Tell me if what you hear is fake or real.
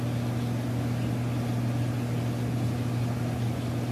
real